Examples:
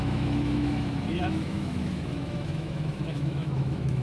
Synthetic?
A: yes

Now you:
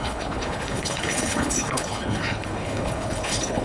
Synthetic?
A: yes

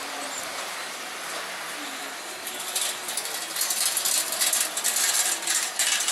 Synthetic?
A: no